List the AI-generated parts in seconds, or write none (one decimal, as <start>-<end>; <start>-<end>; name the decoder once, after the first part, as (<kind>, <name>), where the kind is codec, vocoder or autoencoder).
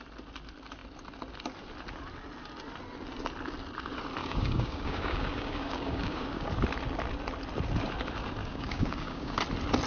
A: 4.2-6.5 (codec, DAC); 8.4-9.4